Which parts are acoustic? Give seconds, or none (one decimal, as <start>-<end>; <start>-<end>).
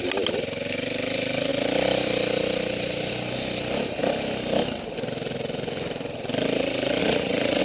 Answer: 0.0-7.0